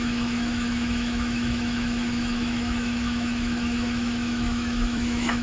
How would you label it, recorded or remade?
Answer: remade